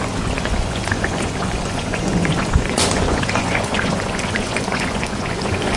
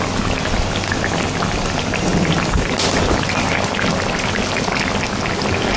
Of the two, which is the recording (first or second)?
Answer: second